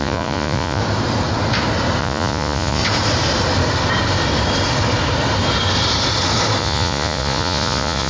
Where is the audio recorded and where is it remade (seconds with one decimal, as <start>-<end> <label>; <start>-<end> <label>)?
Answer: 0.0-0.8 remade; 0.8-2.0 recorded; 2.0-2.8 remade; 2.8-6.6 recorded; 6.6-8.1 remade